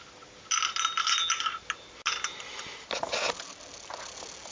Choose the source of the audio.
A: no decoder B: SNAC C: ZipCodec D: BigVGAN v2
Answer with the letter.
A